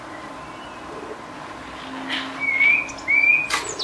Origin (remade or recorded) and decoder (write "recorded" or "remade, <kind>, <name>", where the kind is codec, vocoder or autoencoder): recorded